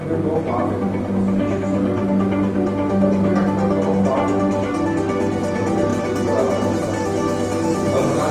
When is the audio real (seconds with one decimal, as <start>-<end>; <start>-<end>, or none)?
0.0-8.3